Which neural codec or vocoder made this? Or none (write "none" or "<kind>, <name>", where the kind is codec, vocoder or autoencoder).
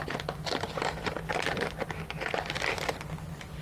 vocoder, BigVGAN v2